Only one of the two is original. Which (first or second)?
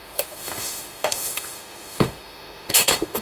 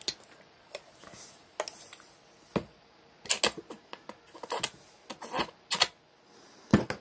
second